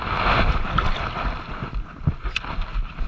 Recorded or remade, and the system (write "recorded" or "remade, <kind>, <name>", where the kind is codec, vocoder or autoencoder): recorded